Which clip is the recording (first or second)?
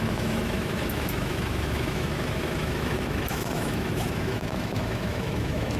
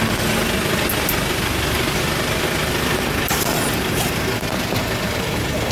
second